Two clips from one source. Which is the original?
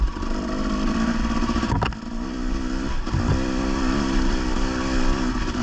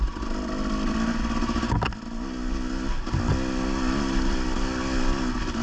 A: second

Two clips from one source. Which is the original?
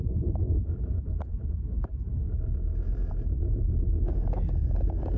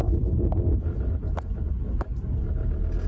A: second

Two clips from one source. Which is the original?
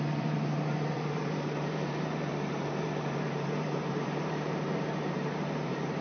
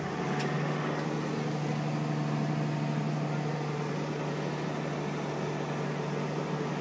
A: second